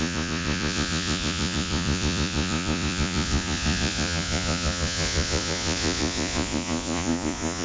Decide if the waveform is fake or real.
fake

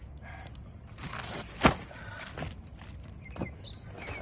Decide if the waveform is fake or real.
real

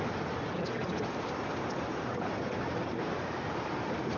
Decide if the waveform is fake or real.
real